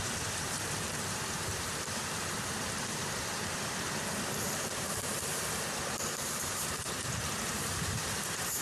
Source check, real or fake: fake